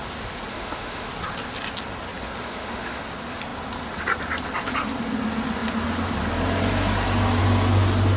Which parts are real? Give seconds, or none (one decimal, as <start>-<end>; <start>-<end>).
0.0-0.5; 1.1-2.4; 3.0-8.2